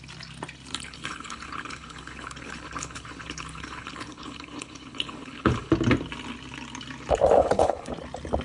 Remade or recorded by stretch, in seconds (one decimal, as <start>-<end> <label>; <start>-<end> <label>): 0.0-0.7 recorded; 0.7-5.7 remade; 5.7-7.4 recorded; 7.4-7.9 remade; 7.9-8.4 recorded